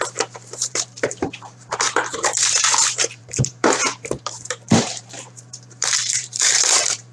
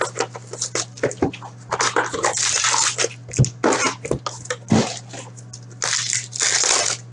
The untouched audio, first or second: second